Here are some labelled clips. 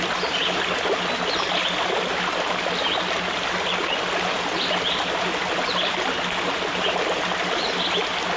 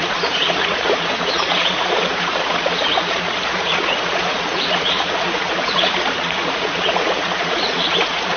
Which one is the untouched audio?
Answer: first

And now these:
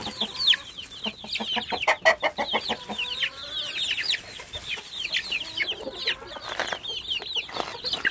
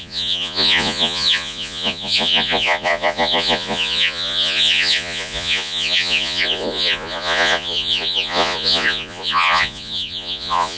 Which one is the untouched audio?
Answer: first